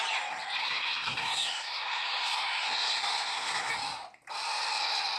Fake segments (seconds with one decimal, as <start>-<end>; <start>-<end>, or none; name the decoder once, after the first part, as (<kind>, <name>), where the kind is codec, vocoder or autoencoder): 0.6-3.7 (codec, SNAC)